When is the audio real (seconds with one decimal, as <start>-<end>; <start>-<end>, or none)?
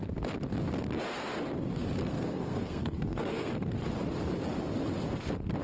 0.0-2.1; 3.5-5.6